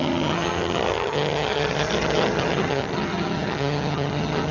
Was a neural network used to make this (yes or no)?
yes